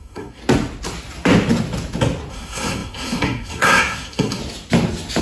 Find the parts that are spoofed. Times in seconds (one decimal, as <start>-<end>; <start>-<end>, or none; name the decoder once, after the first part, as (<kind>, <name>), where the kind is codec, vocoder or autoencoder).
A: 0.0-0.4 (codec, SNAC); 2.3-4.4